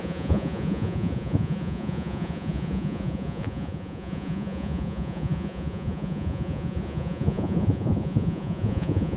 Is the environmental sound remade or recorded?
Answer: remade